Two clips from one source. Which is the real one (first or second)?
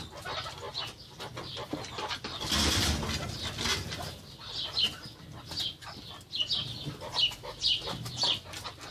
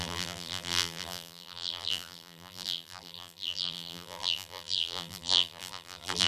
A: first